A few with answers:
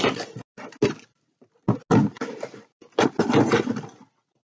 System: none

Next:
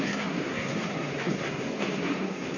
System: codec, SNAC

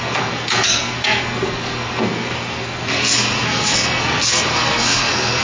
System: codec, SNAC